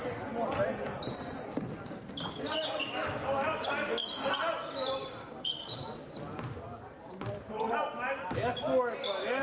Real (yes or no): yes